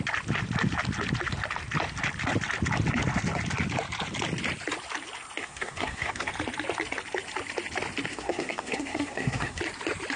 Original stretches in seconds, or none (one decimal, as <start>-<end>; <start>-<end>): 0.0-5.4; 6.3-8.1; 9.6-10.2